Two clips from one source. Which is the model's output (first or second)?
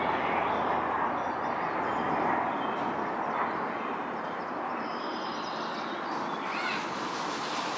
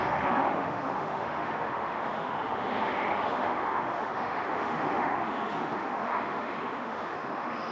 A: second